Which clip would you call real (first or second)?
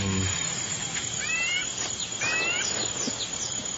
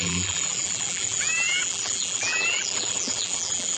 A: first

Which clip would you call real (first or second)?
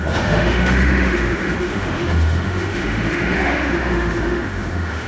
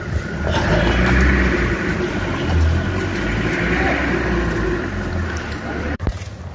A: second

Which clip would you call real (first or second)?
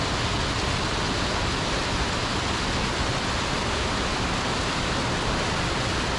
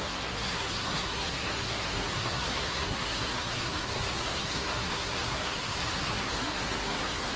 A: first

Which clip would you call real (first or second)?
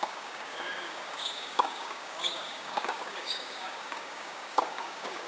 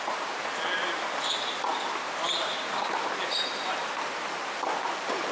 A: second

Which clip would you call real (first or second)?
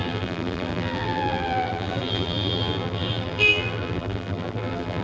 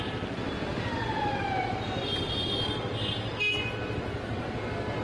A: second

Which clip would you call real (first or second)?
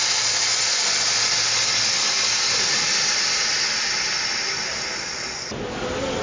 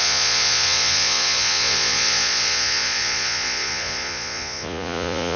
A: first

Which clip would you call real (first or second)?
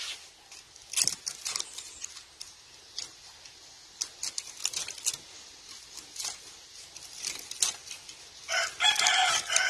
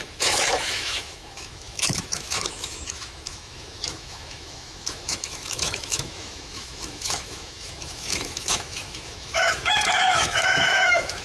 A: first